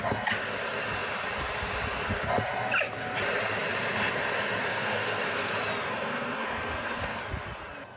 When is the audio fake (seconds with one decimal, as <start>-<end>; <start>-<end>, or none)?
4.7-5.5; 5.9-7.2